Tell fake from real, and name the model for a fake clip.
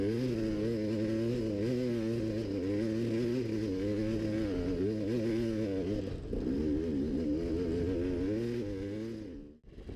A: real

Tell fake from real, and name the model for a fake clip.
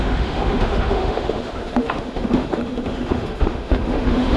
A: fake, autoencoder, DAC-VAE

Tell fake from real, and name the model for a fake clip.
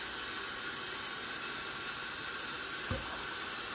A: real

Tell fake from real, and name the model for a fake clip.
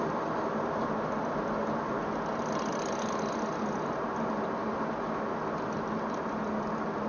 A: real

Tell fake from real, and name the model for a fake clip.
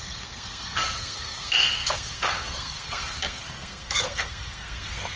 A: fake, codec, SNAC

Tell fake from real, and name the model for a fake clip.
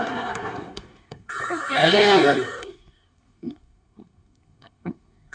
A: fake, codec, SNAC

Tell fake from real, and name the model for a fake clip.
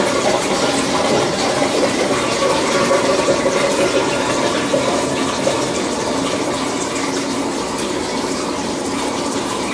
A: fake, vocoder, BigVGAN v2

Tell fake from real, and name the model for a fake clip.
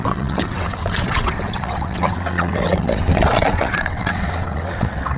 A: fake, vocoder, WaveNeXt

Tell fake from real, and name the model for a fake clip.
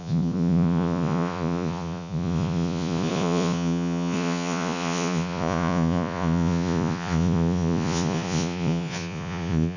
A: fake, vocoder, Vocos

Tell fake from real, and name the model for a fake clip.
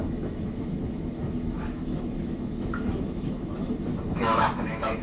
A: fake, autoencoder, DAC-VAE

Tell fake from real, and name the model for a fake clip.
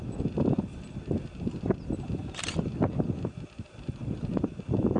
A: real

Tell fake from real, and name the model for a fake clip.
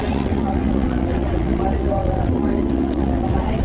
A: fake, vocoder, WaveNeXt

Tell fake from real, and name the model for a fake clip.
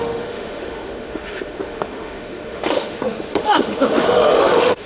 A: fake, autoencoder, DAC-VAE